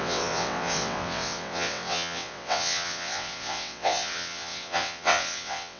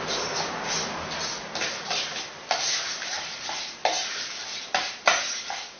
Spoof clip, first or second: first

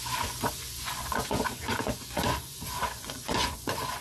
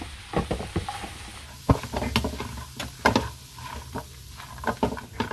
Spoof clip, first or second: first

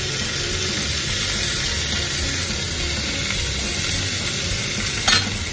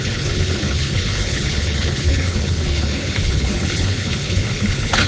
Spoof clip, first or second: second